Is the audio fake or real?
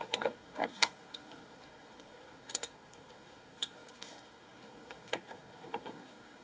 fake